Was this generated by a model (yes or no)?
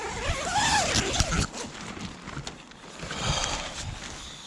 no